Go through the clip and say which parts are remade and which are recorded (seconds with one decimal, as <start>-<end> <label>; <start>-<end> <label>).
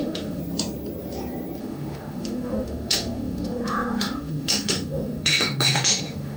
0.0-0.4 remade; 0.4-1.6 recorded; 1.6-6.4 remade